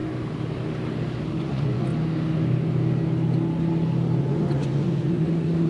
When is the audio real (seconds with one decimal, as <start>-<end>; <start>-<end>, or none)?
0.0-1.3; 1.9-4.2